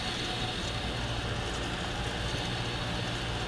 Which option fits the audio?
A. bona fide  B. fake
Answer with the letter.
A